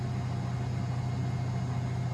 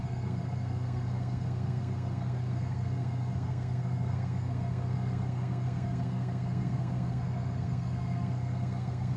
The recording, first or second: first